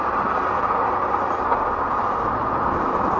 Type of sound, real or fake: real